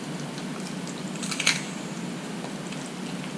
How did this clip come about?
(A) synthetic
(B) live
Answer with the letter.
B